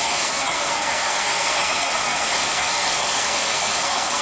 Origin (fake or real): fake